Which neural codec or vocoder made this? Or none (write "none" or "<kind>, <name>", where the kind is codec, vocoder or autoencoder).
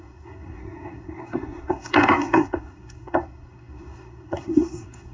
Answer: codec, SNAC